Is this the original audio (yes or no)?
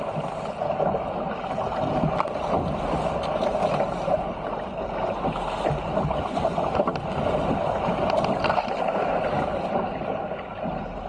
yes